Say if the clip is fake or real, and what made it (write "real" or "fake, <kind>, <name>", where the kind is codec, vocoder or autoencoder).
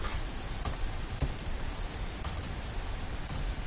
real